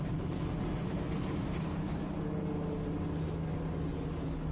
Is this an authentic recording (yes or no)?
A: yes